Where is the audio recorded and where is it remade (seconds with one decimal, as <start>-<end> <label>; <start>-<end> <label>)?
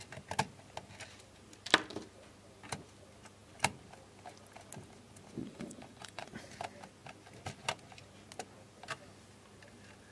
0.0-5.4 recorded; 5.4-6.4 remade; 6.4-10.1 recorded